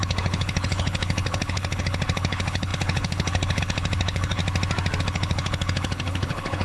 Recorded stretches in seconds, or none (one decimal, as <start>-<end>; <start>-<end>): 4.4-5.0